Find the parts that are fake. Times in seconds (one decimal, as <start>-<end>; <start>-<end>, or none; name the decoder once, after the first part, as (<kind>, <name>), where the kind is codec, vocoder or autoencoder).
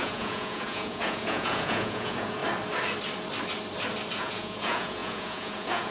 0.0-2.4 (vocoder, Vocos); 4.2-5.9